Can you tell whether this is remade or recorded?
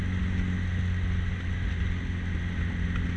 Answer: recorded